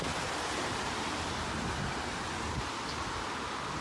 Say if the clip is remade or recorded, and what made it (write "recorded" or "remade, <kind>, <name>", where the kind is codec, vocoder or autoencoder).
recorded